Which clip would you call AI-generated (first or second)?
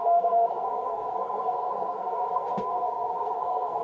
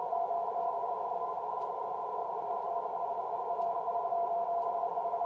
first